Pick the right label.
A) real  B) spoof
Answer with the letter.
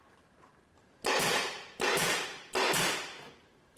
B